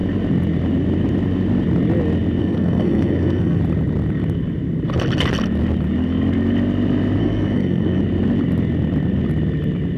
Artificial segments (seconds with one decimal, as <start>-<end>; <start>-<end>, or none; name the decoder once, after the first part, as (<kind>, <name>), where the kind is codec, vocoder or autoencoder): 2.4-3.6 (codec, SNAC); 7.2-8.0